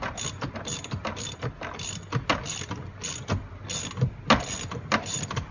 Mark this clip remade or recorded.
recorded